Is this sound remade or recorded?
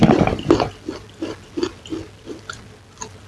recorded